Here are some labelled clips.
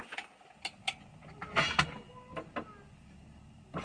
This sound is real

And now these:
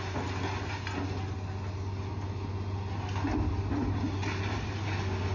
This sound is real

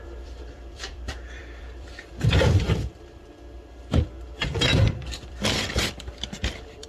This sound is fake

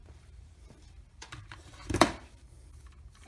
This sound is fake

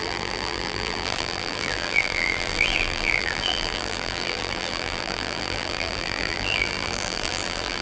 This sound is fake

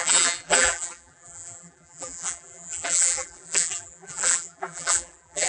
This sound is fake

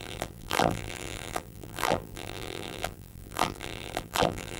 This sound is fake